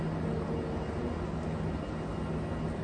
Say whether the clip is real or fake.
real